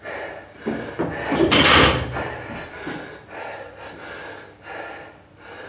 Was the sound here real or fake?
real